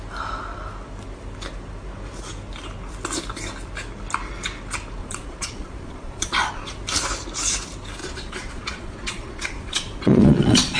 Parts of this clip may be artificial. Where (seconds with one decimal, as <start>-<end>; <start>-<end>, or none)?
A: 5.0-6.7; 8.0-10.8